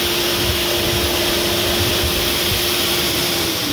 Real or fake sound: fake